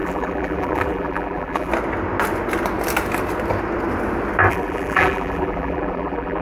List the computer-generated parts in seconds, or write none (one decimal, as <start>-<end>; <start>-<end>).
0.0-1.7; 4.5-6.4